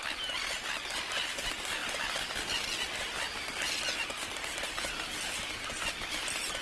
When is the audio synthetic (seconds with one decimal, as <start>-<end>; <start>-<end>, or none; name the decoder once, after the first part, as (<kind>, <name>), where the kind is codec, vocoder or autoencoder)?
none